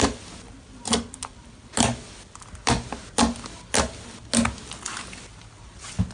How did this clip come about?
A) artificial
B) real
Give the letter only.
B